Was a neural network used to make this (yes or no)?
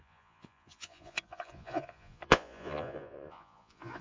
yes